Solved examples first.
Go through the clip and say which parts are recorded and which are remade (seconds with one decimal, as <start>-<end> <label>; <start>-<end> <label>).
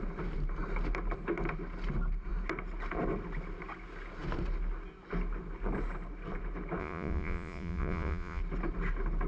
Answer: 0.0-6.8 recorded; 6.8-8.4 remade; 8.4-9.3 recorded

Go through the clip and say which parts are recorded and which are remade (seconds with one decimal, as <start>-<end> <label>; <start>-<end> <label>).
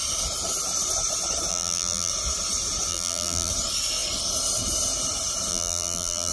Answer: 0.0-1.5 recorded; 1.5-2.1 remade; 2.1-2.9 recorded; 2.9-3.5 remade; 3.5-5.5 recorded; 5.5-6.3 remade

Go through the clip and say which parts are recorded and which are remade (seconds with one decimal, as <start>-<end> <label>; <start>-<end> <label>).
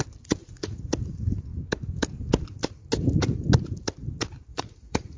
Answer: 0.0-0.4 recorded; 0.4-0.9 remade; 0.9-4.5 recorded; 4.5-5.2 remade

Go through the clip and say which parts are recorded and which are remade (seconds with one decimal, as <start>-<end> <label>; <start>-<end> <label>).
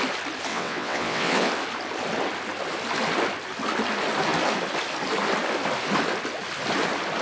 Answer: 0.0-0.5 recorded; 0.5-1.5 remade; 1.5-7.2 recorded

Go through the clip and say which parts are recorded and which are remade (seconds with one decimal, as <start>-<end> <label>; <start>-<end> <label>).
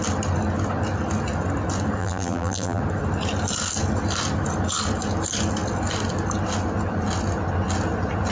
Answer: 0.0-2.0 recorded; 2.0-2.8 remade; 2.8-8.3 recorded